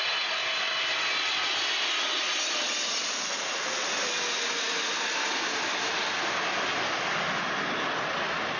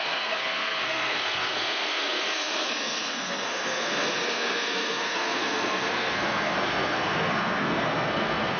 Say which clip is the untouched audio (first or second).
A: first